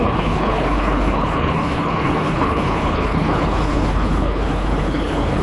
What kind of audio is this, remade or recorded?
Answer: remade